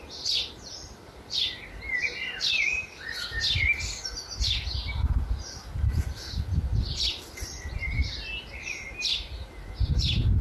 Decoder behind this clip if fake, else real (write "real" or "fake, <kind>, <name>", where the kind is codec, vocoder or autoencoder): real